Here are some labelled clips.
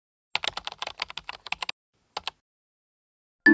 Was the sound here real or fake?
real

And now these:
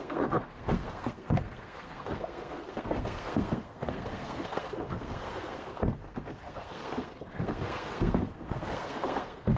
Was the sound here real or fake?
fake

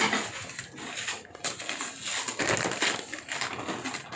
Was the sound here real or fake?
real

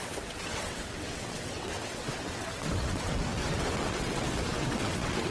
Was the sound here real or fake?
fake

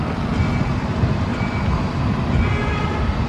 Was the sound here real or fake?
real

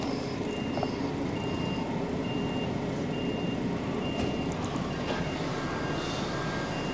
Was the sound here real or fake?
real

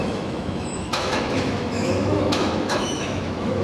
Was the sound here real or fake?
fake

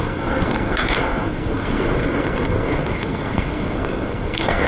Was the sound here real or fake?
fake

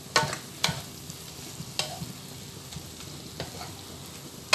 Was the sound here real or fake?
real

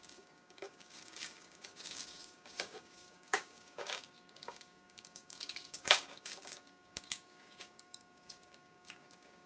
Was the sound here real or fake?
fake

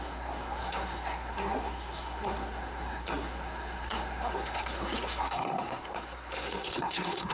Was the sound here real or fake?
fake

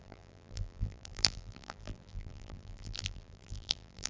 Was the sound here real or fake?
fake